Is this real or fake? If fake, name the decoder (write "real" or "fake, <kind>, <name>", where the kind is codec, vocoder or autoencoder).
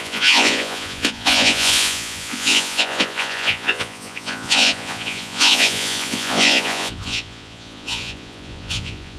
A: fake, vocoder, Vocos